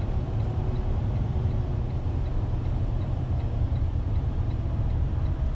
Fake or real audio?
fake